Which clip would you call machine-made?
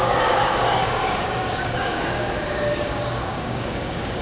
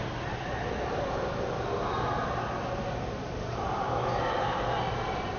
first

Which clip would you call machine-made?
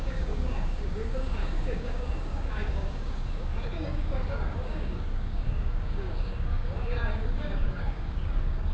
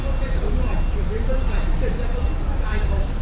first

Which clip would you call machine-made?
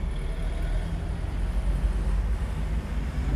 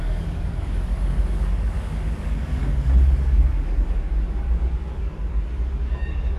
second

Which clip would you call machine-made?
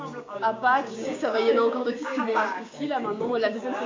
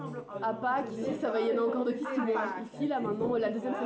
first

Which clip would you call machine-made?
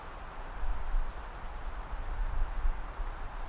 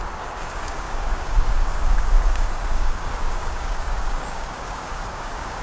second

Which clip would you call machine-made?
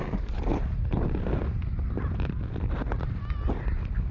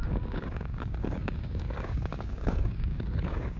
second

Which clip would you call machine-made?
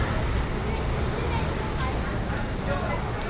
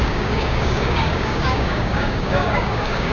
second